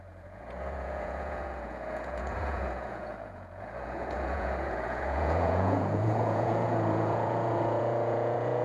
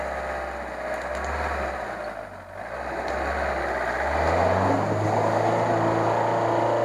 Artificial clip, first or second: first